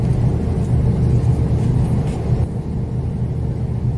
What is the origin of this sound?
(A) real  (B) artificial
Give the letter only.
A